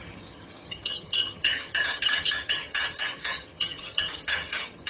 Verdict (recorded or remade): remade